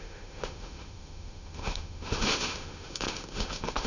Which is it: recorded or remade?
remade